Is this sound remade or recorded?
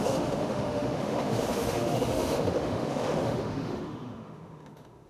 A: remade